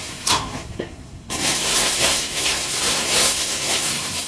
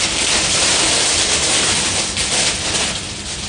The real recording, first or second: second